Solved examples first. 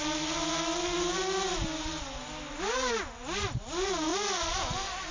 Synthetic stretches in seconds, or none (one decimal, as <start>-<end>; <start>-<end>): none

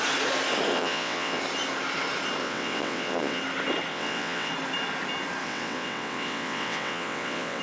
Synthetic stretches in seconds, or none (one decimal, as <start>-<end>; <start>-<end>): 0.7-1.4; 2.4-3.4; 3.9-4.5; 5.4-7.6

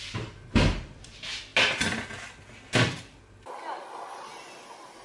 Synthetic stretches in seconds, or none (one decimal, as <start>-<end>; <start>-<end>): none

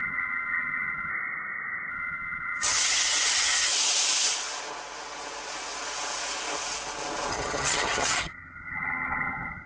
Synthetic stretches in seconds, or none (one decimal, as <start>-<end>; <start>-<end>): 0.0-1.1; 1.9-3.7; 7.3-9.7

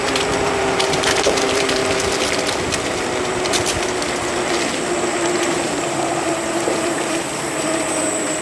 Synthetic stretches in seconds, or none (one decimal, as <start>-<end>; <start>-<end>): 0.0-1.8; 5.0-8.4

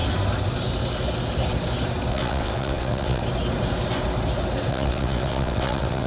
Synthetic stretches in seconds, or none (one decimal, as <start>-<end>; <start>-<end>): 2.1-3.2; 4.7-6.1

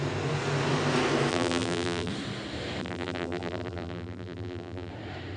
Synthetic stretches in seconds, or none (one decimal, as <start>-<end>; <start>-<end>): 1.3-2.1; 2.8-4.9

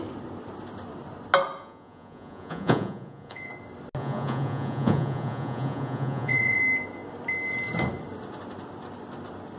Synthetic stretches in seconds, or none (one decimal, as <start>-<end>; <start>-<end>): 1.6-3.5; 4.0-6.6